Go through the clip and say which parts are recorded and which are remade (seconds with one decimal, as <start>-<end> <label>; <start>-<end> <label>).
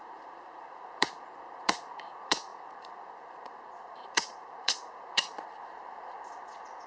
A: 0.0-6.9 remade